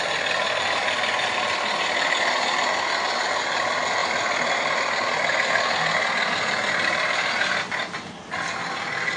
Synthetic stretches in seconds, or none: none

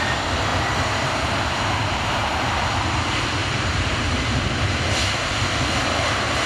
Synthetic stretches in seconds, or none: 0.5-1.3 (vocoder, BigVGAN v2); 3.4-6.5

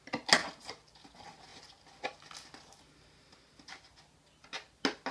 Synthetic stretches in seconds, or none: none

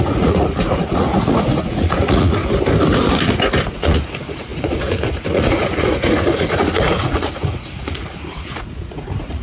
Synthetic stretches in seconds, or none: 0.0-2.4 (vocoder, Vocos); 3.7-9.4

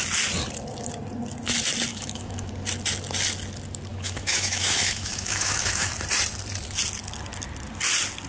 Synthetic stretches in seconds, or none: 1.9-2.5 (autoencoder, DAC-VAE); 3.9-5.9